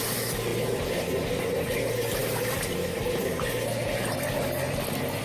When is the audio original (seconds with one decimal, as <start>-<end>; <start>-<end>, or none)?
0.0-5.2